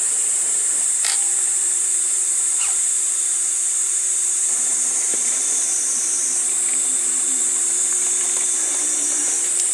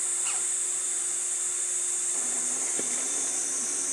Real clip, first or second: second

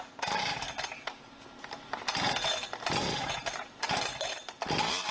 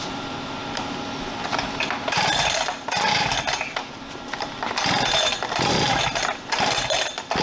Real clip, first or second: first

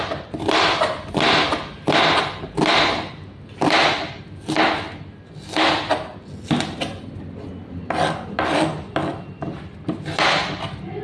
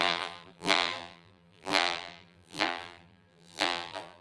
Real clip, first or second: first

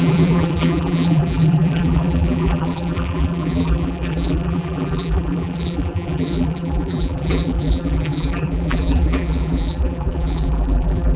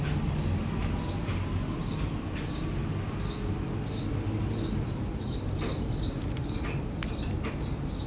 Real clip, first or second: second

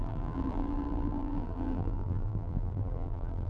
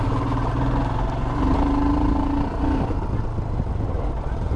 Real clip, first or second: second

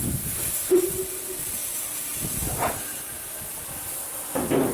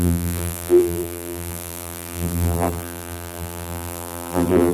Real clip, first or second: first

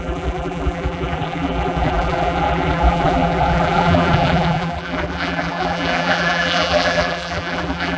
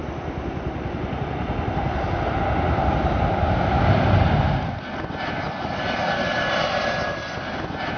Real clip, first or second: second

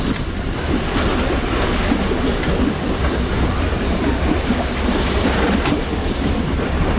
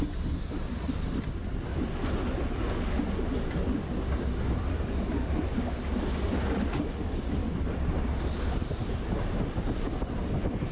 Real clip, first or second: second